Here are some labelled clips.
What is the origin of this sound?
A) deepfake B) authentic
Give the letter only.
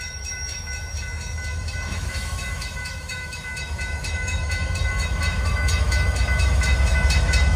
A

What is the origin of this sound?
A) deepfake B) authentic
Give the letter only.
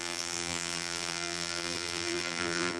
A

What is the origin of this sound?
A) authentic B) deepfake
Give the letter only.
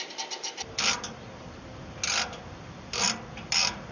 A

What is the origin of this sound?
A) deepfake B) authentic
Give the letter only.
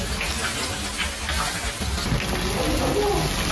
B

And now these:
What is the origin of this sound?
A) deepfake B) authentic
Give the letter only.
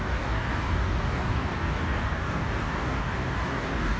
A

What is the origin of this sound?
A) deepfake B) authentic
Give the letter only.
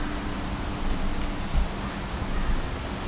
B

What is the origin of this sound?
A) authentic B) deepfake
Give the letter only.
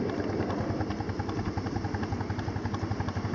A